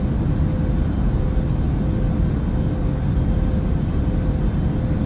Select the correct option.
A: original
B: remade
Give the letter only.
A